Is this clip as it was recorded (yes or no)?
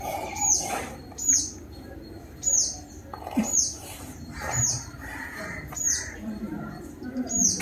no